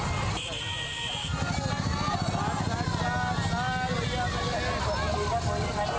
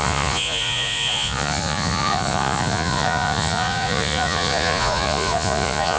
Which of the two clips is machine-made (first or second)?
second